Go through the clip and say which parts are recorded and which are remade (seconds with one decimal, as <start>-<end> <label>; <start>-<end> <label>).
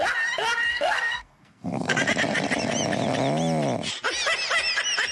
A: 0.0-0.7 recorded; 0.7-2.0 remade; 2.0-5.1 recorded